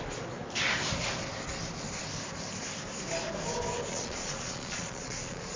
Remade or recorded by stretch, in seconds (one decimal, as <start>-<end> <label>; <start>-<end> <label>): 0.0-3.9 recorded; 3.9-5.6 remade